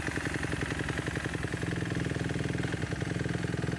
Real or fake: real